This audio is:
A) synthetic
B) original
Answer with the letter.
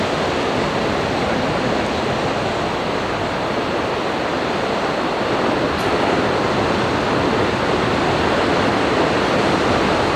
B